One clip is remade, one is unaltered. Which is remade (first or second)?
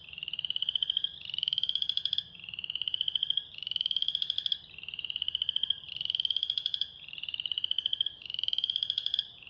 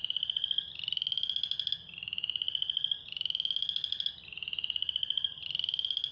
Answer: first